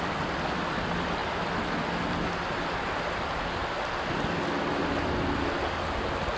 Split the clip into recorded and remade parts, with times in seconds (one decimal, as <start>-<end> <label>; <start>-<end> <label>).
0.0-6.4 recorded